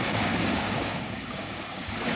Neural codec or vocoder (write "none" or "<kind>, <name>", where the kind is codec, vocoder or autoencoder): codec, DAC